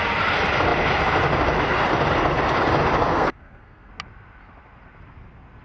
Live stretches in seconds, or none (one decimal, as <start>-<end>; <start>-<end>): 0.0-3.1; 3.9-5.6